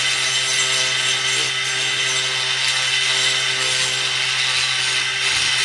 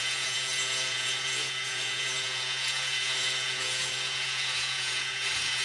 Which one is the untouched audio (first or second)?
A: first